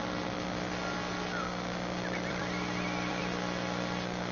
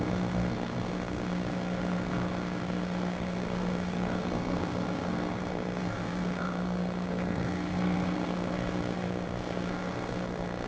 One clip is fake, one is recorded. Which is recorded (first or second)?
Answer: first